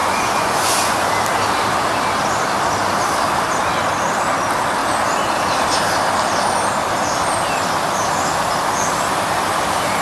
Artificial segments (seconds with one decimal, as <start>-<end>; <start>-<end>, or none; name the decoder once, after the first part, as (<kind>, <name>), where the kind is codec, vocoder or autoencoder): 0.0-1.1 (vocoder, Vocos)